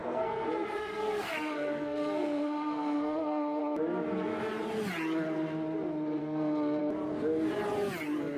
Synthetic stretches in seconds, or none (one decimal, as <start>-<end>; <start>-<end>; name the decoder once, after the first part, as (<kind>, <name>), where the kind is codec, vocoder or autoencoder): 0.0-3.6 (codec, SNAC); 6.2-6.8